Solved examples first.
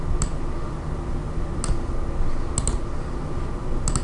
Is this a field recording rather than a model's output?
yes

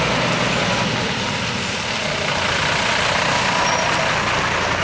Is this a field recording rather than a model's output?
yes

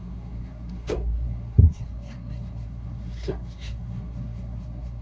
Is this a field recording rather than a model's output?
no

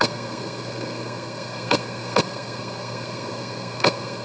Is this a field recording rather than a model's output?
no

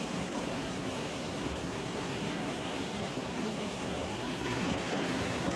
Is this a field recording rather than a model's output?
no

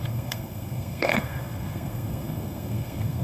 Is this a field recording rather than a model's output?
no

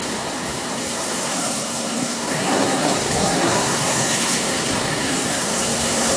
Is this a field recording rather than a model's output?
no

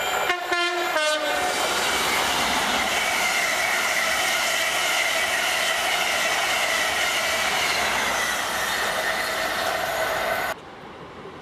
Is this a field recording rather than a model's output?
yes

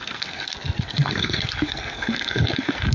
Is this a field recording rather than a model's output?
no